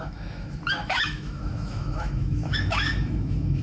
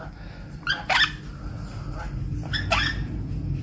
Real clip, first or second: second